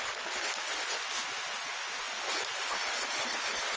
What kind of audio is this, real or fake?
real